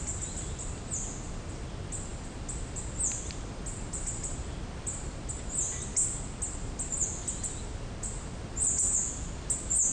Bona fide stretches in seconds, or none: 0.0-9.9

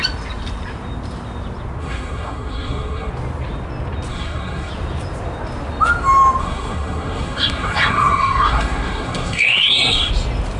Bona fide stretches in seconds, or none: 0.0-1.8; 3.1-4.1; 4.7-6.4; 10.1-10.6

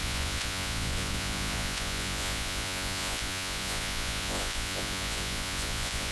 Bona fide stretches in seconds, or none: none

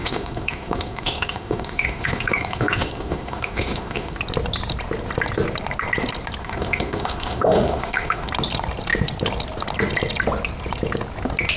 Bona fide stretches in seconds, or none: 4.2-6.4; 8.3-11.6

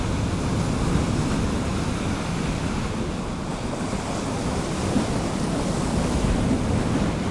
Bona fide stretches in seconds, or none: 0.0-7.3

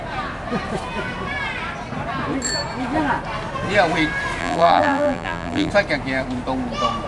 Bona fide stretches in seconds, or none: 0.0-4.4; 5.7-7.1

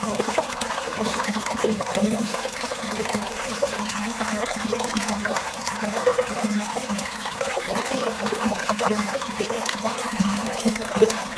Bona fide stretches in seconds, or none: none